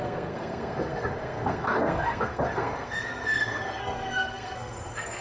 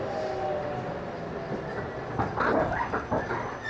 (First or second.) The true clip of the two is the second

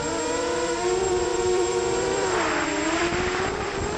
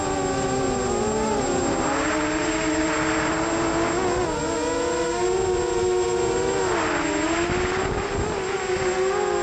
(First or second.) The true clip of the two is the second